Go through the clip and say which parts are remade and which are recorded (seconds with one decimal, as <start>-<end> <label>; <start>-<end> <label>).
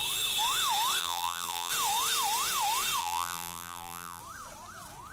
0.0-1.0 recorded; 1.0-1.7 remade; 1.7-3.0 recorded; 3.0-4.2 remade; 4.2-5.1 recorded